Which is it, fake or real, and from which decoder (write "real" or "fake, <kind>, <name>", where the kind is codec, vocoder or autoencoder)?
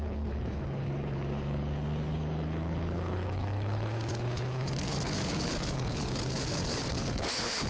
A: fake, codec, HILCodec